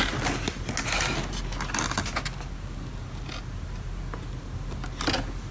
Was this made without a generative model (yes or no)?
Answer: yes